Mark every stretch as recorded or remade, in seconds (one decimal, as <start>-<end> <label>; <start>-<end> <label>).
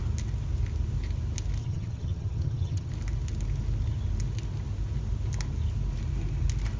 0.0-1.6 recorded; 1.6-2.9 remade; 2.9-6.8 recorded